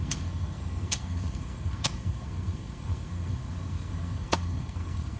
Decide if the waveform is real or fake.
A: fake